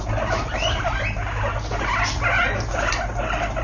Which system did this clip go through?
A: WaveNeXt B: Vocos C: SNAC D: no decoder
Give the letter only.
D